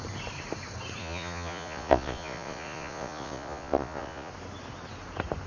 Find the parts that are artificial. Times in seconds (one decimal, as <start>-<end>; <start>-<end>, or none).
1.0-4.3